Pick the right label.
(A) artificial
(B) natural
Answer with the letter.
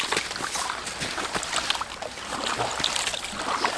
B